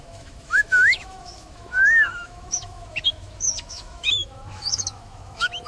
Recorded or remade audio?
remade